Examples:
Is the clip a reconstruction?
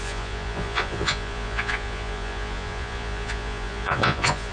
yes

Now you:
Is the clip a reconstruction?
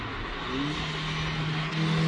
no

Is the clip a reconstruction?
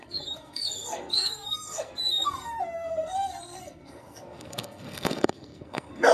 yes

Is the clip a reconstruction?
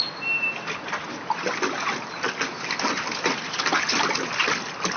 no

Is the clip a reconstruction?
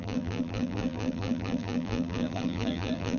yes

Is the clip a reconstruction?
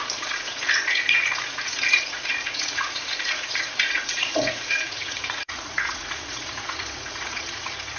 yes